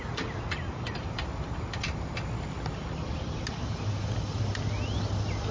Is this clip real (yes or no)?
yes